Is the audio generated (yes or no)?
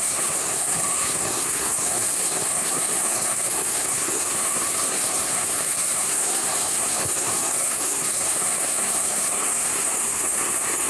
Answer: yes